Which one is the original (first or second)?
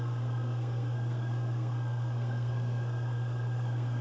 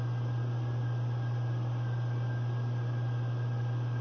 second